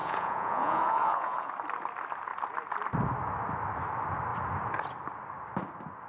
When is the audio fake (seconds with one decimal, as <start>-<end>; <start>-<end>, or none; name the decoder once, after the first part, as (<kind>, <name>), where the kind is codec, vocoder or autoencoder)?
0.0-1.5 (vocoder, Vocos)